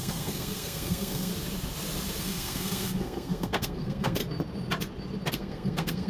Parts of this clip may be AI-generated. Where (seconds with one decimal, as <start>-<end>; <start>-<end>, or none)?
0.0-1.3; 2.2-4.2; 5.3-6.1

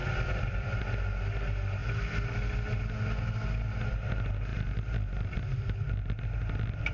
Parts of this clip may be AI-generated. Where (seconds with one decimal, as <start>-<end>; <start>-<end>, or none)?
0.0-0.8

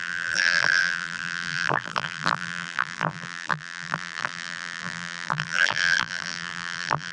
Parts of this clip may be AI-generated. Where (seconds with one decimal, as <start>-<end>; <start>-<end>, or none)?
0.0-7.1

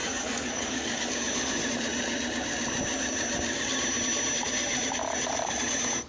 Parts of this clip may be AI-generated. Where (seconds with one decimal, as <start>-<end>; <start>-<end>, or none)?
0.0-1.1

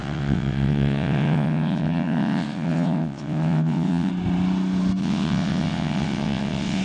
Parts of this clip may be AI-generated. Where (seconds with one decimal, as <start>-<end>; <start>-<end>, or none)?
0.0-4.1; 5.0-6.8

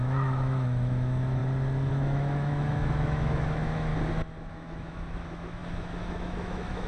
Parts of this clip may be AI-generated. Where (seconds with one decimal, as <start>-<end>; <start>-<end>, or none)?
0.0-1.4; 1.9-3.9; 4.5-6.9